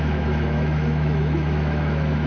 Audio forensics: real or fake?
fake